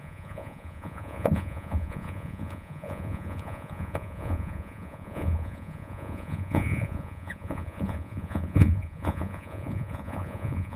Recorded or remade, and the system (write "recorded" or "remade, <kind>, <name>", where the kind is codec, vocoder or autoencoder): remade, vocoder, Vocos